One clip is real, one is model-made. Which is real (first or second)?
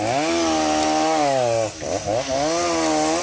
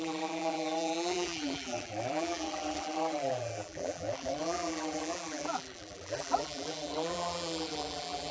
first